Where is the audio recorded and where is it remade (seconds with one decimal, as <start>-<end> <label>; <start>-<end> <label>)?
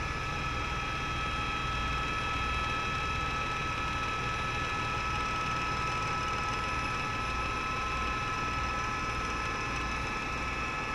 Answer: 0.0-10.9 recorded